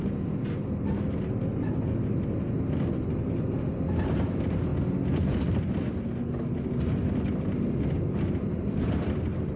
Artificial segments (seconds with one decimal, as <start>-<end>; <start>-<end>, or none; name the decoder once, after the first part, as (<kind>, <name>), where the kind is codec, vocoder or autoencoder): none